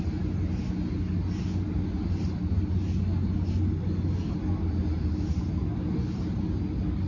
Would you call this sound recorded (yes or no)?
yes